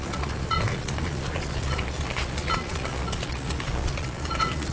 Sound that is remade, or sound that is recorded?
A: remade